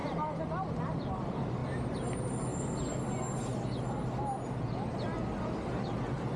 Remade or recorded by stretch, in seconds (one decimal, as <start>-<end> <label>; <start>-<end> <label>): 0.0-6.4 recorded